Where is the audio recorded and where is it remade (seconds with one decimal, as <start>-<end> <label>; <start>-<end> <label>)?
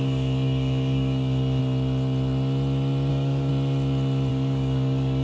0.0-1.6 remade; 1.6-3.1 recorded; 3.1-3.5 remade; 3.5-4.3 recorded; 4.3-5.2 remade